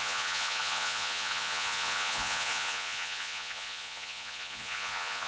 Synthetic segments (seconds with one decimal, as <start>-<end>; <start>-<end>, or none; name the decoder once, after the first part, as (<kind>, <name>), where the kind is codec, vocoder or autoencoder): 0.0-5.3 (vocoder, Vocos)